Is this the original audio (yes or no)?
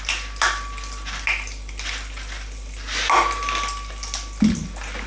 yes